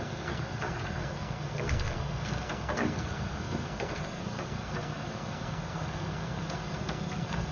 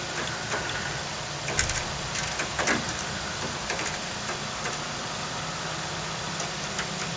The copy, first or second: first